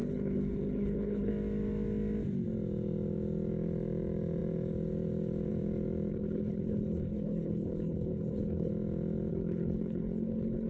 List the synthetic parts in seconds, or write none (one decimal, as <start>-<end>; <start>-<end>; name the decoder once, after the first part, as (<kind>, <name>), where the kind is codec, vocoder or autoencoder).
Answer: 0.0-1.3 (codec, HILCodec); 6.1-8.7; 9.3-10.7